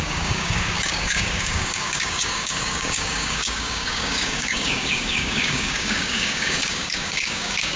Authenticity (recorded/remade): remade